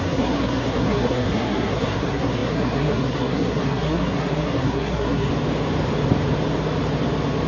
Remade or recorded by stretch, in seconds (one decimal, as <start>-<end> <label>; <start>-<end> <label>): 0.0-5.3 remade; 5.3-7.5 recorded